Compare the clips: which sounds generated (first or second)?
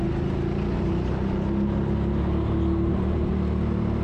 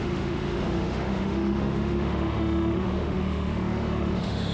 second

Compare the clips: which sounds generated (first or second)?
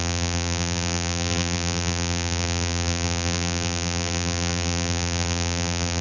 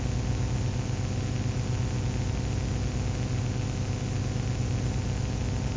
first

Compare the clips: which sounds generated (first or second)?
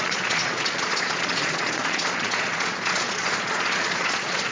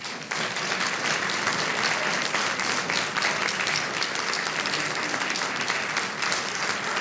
first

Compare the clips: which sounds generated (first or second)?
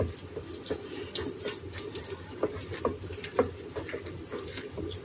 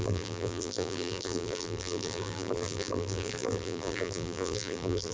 second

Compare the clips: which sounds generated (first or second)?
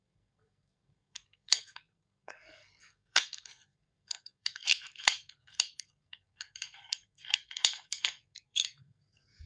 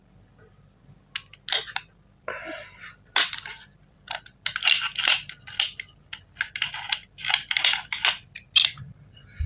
first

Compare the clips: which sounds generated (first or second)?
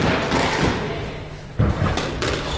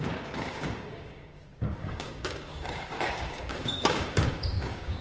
second